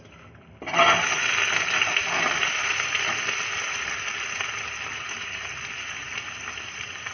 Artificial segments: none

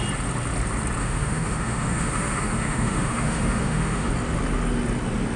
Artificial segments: 1.0-4.1 (autoencoder, DAC-VAE)

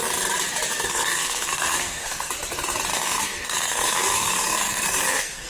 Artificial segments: 0.7-2.3 (codec, SNAC); 2.9-5.5

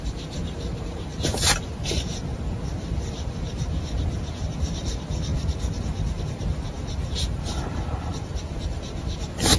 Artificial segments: 0.0-9.6 (vocoder, BigVGAN v2)

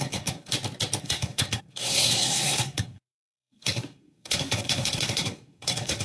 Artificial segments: 0.0-0.5 (codec, SNAC); 1.0-6.0

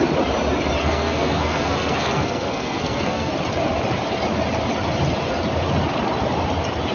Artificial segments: 0.8-3.3 (codec, SNAC)

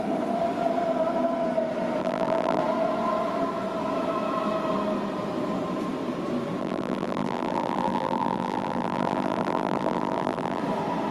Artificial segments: 2.0-2.6 (vocoder, BigVGAN v2); 6.6-10.6

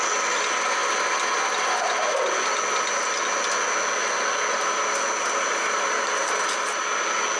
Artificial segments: 5.5-6.8 (vocoder, BigVGAN v2)